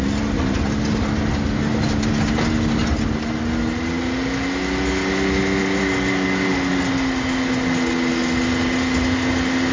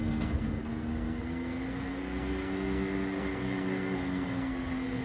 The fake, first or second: second